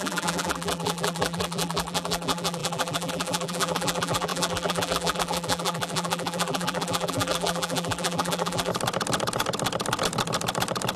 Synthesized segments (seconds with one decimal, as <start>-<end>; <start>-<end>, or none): 0.0-8.7

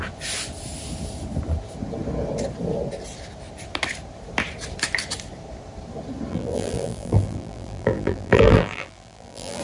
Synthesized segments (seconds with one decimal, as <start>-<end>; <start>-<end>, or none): 6.3-9.6

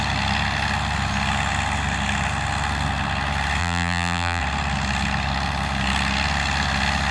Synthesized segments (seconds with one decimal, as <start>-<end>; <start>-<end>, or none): 3.6-4.4

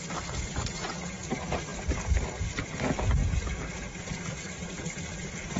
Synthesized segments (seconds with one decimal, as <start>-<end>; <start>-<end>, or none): 0.6-1.2

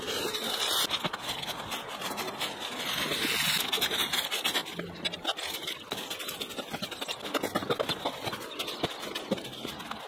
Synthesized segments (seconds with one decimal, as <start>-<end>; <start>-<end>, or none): none